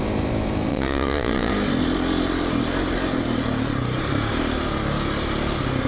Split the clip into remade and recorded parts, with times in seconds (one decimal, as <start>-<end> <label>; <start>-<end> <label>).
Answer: 0.0-0.7 recorded; 0.7-1.5 remade; 1.5-5.9 recorded